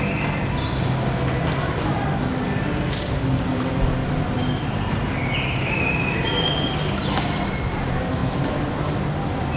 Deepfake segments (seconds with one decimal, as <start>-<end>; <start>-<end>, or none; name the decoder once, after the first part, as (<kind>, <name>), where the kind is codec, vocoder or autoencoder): none